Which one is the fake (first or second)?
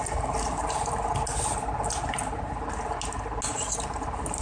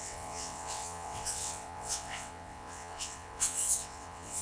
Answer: second